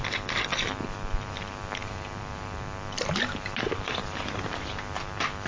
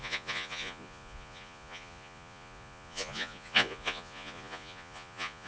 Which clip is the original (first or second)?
first